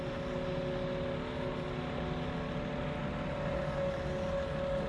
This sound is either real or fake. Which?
real